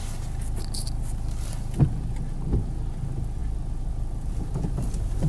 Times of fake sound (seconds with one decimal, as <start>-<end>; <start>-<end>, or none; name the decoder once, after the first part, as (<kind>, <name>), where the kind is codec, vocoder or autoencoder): none